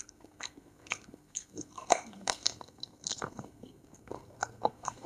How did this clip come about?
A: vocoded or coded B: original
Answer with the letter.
A